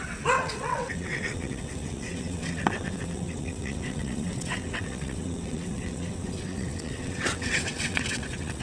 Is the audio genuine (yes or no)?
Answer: no